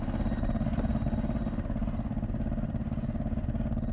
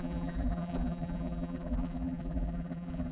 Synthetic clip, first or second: second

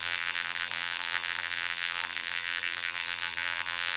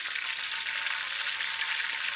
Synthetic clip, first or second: first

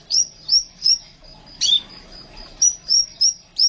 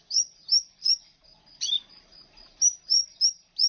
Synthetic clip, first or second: second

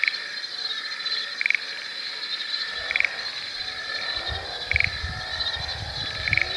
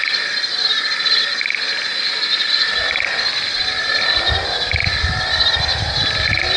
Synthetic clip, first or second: first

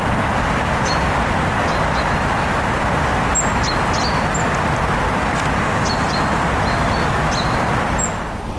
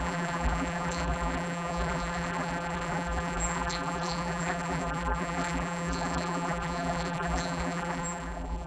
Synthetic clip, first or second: second